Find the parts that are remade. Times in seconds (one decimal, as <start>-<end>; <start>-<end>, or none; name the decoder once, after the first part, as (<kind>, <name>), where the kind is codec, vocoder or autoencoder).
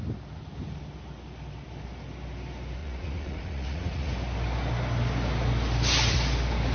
2.8-4.1 (vocoder, Vocos)